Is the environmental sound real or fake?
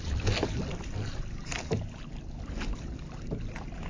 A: real